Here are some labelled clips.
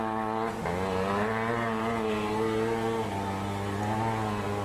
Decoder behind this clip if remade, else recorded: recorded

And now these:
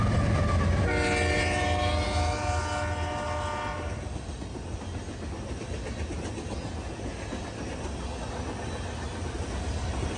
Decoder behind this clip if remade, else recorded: recorded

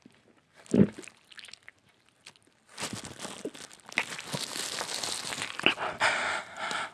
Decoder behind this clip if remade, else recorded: recorded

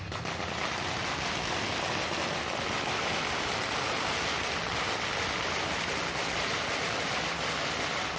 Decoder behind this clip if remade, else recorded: recorded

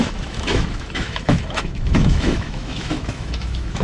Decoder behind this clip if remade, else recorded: remade, autoencoder, DAC-VAE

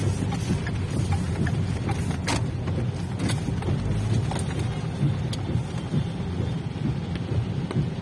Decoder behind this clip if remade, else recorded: recorded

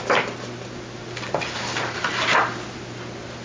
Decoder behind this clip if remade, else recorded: recorded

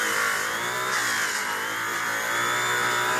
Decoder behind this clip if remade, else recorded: recorded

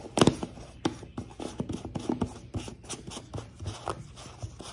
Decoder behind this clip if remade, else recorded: recorded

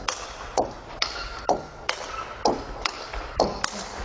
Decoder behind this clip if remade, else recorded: recorded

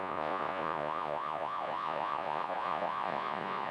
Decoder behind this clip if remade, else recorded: remade, vocoder, Vocos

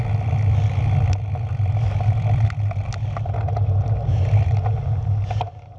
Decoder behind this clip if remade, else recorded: recorded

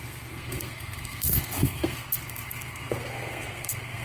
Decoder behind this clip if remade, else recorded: remade, codec, SNAC